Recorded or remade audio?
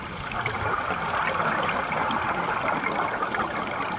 recorded